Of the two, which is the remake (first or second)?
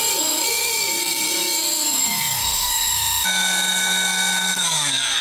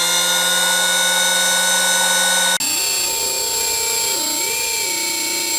first